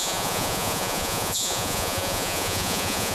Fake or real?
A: fake